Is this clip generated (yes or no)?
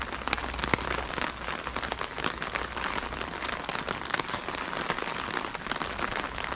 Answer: no